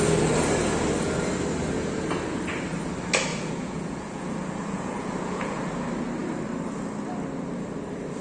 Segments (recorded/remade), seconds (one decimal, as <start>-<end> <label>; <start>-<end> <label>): 0.0-3.3 recorded; 3.3-5.6 remade; 5.6-8.2 recorded